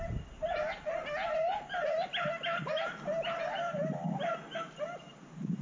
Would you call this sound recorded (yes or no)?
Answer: yes